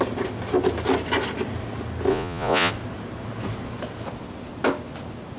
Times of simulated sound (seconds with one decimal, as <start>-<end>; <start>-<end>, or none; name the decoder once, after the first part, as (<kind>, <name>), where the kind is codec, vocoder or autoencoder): 2.1-2.7 (vocoder, Vocos)